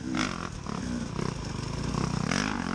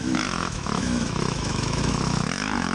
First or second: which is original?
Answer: first